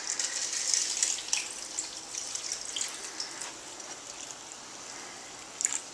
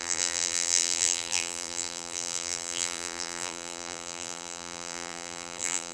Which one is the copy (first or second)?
second